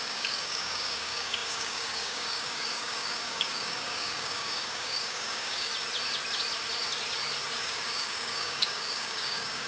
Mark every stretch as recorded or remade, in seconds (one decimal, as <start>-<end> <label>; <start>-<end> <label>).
0.0-5.7 remade; 5.7-7.6 recorded; 7.6-9.7 remade